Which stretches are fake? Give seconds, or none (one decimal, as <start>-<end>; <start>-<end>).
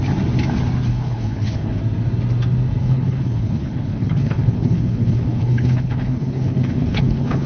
0.9-1.8; 2.8-7.5